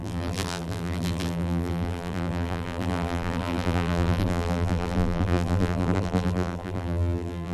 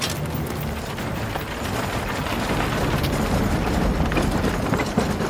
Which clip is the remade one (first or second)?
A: first